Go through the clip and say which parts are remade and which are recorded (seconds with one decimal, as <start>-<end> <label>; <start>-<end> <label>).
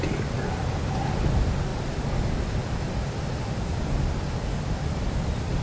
0.0-5.6 recorded